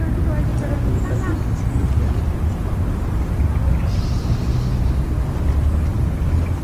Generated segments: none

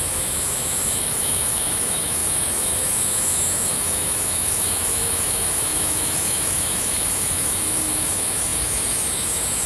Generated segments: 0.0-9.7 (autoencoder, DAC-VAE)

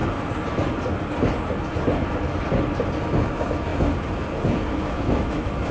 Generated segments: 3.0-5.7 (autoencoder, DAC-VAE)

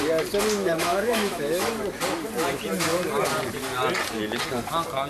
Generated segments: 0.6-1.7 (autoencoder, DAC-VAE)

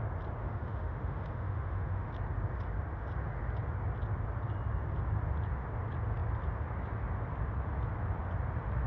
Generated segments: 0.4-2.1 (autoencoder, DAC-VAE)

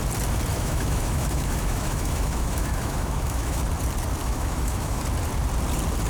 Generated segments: 0.5-3.6 (autoencoder, DAC-VAE); 4.2-5.0